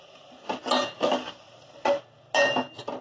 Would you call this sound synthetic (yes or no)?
no